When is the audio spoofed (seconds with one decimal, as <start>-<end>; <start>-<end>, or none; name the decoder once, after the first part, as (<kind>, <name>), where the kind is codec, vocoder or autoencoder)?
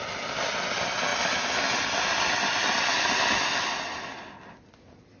none